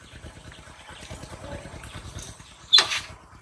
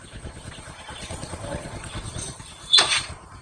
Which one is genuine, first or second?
first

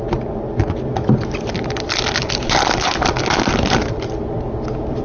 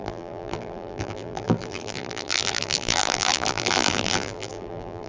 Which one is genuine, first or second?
first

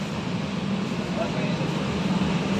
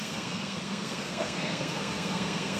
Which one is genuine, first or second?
first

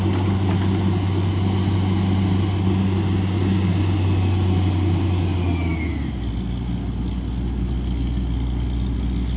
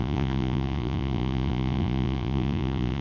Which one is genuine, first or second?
first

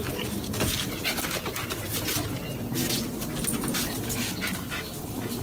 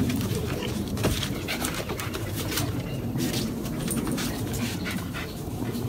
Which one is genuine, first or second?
first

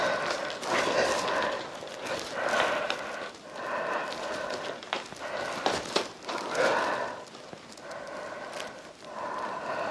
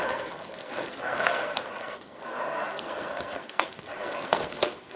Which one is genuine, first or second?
first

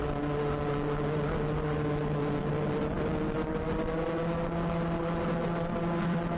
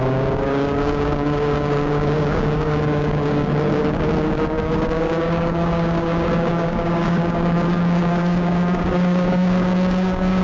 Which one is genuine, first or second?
first